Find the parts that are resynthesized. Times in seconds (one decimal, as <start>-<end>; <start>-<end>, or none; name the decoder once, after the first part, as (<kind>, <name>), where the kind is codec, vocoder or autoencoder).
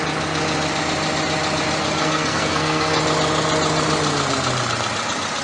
1.8-3.0 (codec, SNAC)